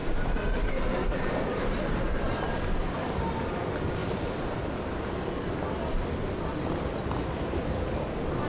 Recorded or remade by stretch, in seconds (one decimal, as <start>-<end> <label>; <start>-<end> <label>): 0.0-1.6 remade; 1.6-4.0 recorded; 4.0-4.9 remade; 4.9-8.5 recorded